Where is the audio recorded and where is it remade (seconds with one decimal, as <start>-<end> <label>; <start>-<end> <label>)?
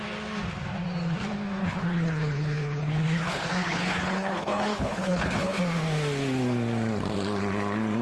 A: 0.0-1.6 recorded; 1.6-5.6 remade; 5.6-8.0 recorded